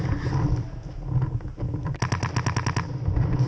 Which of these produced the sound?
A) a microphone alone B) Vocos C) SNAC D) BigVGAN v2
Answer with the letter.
A